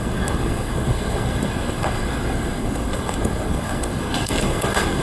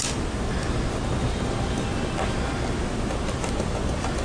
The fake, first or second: first